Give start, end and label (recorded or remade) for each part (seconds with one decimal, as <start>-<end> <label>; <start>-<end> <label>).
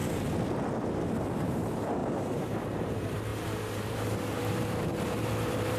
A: 0.0-1.3 recorded; 1.3-5.8 remade